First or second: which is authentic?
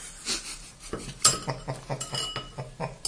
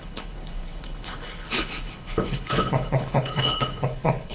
first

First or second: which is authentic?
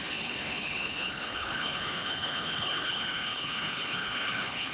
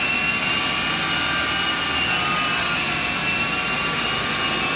second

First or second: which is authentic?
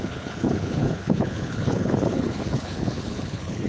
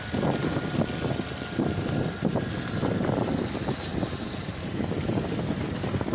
second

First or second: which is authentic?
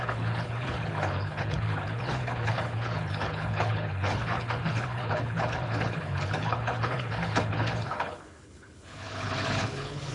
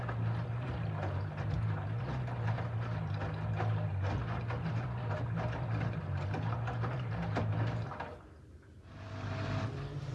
second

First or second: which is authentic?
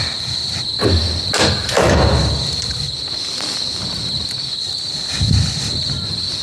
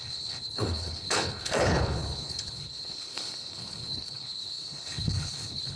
first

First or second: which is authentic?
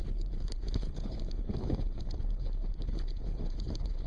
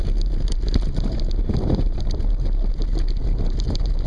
second